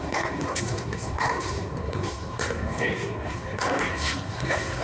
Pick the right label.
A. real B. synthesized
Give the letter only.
B